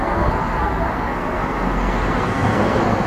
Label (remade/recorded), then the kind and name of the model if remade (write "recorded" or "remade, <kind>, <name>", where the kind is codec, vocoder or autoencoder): remade, codec, SNAC